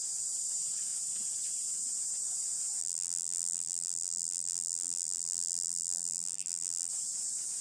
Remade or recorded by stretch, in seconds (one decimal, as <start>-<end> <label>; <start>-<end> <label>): 0.0-2.8 recorded; 2.8-6.9 remade; 6.9-7.6 recorded